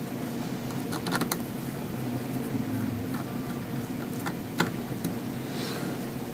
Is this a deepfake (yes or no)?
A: no